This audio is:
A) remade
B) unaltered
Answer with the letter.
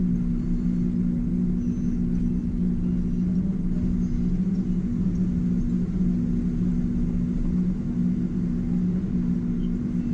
B